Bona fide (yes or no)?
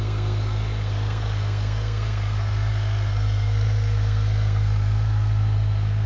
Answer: no